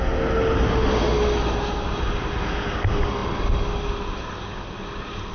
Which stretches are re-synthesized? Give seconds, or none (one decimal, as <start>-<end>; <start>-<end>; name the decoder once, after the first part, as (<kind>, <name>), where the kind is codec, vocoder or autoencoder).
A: none